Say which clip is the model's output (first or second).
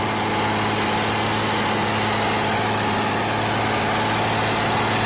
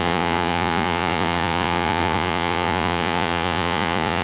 second